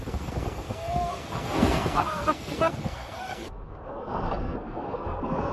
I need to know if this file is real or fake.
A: fake